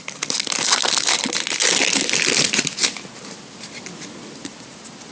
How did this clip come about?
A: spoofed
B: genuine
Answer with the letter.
B